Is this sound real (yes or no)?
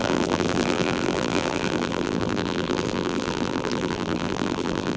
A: no